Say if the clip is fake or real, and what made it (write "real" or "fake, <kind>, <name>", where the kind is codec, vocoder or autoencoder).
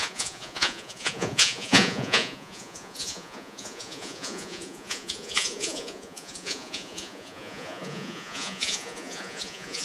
fake, vocoder, Vocos